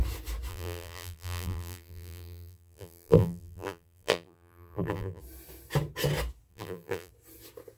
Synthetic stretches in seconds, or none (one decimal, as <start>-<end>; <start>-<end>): 0.5-5.2; 6.5-7.1